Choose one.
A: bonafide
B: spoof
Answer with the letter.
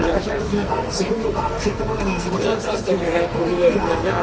B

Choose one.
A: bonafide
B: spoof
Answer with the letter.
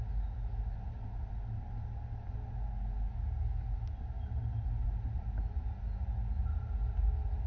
A